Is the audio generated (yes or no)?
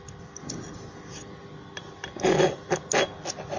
no